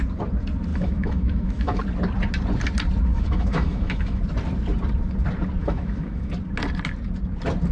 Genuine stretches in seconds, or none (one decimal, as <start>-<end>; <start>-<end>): 0.0-0.7; 1.8-3.1; 4.2-5.6; 6.3-7.7